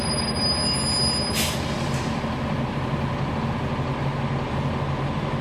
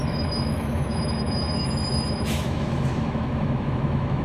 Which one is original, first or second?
first